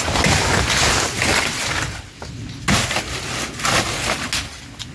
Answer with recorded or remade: recorded